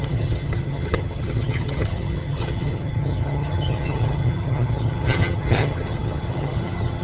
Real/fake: fake